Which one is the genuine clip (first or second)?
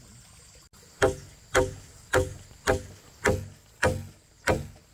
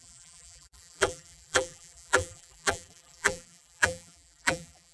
first